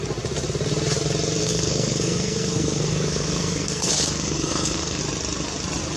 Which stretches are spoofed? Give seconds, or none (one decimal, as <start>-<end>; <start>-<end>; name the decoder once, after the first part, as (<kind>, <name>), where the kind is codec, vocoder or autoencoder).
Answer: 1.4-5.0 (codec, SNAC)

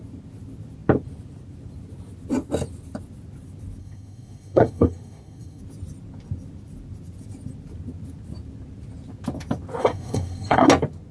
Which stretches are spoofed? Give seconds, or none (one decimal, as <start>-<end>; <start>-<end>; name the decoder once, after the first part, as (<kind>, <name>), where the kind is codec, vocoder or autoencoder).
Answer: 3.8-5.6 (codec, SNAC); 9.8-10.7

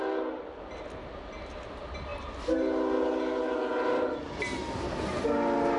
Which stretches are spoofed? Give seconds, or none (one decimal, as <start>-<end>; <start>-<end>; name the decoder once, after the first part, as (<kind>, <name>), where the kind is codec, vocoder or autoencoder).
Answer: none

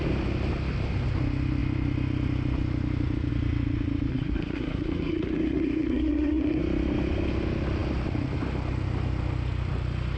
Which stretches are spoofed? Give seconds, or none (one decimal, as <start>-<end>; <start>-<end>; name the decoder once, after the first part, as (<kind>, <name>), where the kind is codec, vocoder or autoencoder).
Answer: 4.1-6.6 (codec, SNAC)